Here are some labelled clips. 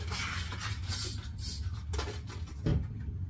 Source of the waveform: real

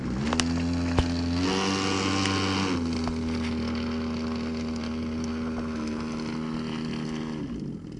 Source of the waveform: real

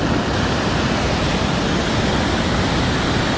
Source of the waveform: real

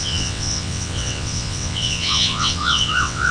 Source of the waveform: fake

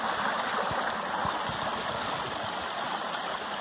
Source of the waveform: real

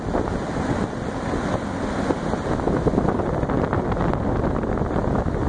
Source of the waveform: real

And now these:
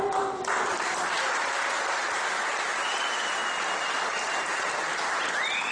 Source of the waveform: real